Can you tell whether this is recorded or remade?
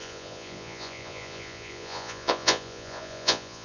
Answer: remade